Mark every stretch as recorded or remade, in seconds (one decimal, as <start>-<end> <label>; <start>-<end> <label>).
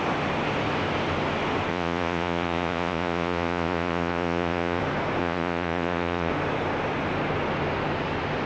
0.0-1.7 recorded; 1.7-4.8 remade; 4.8-5.2 recorded; 5.2-6.3 remade; 6.3-8.5 recorded